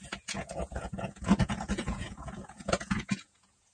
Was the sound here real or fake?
fake